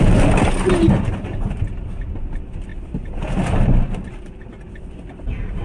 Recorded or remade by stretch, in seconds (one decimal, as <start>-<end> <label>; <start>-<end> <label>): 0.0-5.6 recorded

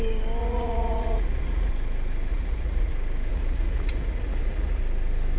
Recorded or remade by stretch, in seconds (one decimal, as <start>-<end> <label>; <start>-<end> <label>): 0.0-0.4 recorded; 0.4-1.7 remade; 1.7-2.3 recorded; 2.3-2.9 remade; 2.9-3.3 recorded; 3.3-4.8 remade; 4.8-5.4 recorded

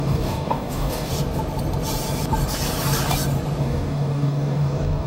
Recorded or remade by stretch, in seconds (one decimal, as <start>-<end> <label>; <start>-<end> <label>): 0.0-1.1 remade; 1.1-3.6 recorded; 3.6-5.1 remade

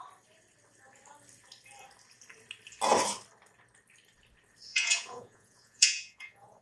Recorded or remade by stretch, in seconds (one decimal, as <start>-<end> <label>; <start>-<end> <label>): 0.0-4.7 recorded; 4.7-6.6 remade

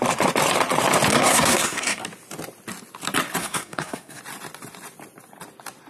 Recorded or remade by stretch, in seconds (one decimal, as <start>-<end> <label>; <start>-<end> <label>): 0.0-1.1 recorded; 1.1-2.0 remade; 2.0-3.4 recorded; 3.4-4.2 remade; 4.2-5.9 recorded

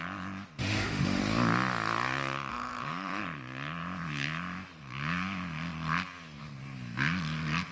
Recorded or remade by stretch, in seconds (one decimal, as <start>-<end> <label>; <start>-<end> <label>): 0.0-0.6 recorded; 0.6-1.2 remade; 1.2-2.5 recorded; 2.5-3.2 remade; 3.2-7.7 recorded

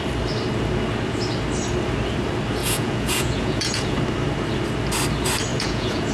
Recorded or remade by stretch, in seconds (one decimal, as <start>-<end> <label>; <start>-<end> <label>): 0.0-2.6 recorded; 2.6-4.0 remade; 4.0-5.5 recorded; 5.5-6.1 remade